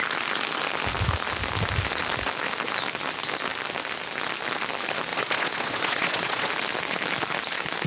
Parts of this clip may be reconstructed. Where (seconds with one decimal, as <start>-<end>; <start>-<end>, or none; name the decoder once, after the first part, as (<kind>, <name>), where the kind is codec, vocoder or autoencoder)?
5.1-6.5 (vocoder, Vocos)